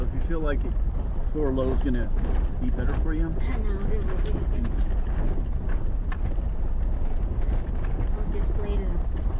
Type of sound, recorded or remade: recorded